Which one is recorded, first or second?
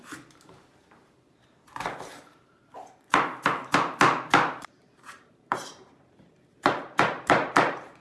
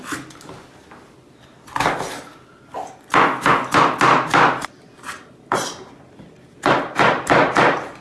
second